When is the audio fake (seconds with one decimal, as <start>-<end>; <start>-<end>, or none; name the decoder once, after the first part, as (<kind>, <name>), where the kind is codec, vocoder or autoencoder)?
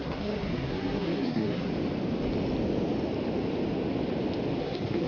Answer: 0.0-1.7 (codec, SNAC); 4.6-5.1